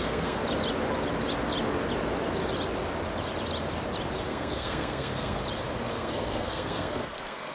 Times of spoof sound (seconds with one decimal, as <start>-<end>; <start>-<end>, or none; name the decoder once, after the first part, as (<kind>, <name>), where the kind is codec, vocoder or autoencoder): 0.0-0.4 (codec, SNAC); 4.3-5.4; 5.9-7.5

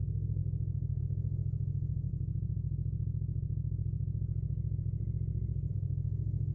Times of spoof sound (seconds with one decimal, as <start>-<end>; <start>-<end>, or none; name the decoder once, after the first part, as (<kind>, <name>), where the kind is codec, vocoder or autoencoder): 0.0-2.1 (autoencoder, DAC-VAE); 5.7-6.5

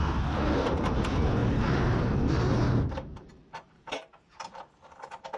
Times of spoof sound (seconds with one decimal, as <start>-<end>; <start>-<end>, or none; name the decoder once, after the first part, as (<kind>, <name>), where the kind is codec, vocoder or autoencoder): 1.4-4.6 (vocoder, BigVGAN v2)

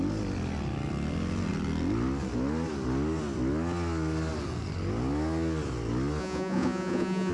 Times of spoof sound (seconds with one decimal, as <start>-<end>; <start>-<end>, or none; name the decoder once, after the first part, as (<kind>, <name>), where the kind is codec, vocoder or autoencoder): 6.2-7.3 (vocoder, Vocos)

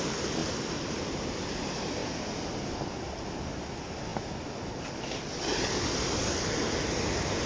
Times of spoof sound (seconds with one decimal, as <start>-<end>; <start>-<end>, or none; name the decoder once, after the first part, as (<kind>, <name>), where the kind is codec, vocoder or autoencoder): none

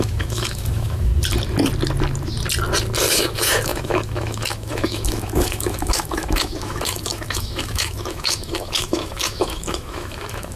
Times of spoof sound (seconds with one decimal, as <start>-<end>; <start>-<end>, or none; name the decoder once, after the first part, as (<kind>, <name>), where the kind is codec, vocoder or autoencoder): 0.0-1.1 (autoencoder, DAC-VAE); 3.1-10.6

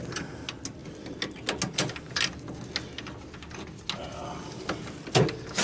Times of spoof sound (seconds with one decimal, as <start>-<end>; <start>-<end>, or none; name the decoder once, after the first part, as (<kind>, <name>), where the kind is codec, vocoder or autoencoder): none